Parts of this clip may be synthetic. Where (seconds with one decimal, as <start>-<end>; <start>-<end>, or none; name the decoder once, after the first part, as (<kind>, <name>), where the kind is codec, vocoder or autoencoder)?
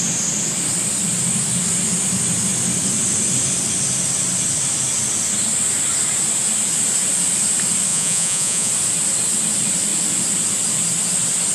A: 7.9-8.7 (vocoder, Vocos)